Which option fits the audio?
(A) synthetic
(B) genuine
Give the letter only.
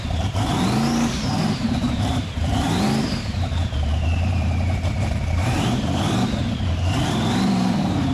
A